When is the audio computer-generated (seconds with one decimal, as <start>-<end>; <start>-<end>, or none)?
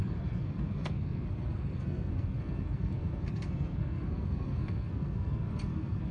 0.0-6.1